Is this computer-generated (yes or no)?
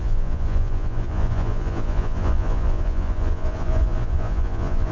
yes